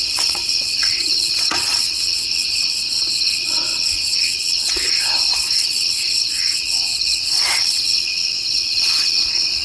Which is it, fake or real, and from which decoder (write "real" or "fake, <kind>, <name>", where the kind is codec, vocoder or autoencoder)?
fake, vocoder, WaveNeXt